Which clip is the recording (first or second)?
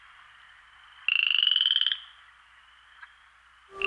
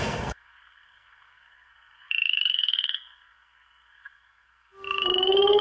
first